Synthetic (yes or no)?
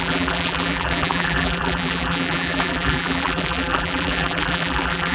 yes